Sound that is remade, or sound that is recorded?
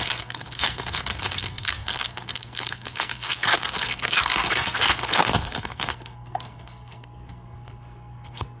remade